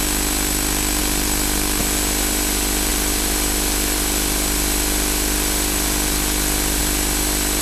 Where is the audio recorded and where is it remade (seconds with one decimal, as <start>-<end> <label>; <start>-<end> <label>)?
0.0-1.0 recorded; 1.0-1.8 remade; 1.8-2.9 recorded; 2.9-6.8 remade; 6.8-7.6 recorded